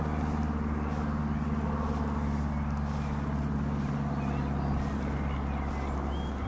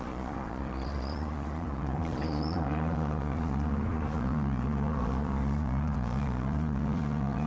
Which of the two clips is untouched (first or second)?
first